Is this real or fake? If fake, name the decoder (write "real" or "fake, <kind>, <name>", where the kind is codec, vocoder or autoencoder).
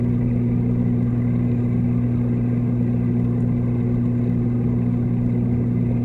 real